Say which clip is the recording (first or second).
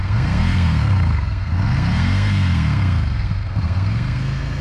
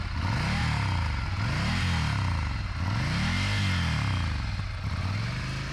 second